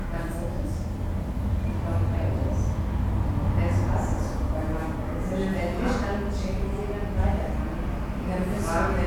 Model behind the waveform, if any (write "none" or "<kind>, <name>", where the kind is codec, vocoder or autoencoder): none